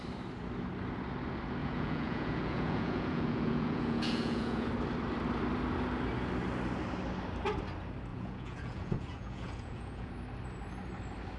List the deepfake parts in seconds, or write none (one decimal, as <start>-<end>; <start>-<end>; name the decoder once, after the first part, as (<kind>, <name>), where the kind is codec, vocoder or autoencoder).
1.6-4.7 (vocoder, Vocos); 8.1-10.1